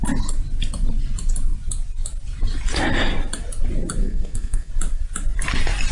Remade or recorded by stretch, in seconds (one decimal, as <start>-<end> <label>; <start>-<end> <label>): 0.0-4.0 recorded; 4.0-4.7 remade; 4.7-5.9 recorded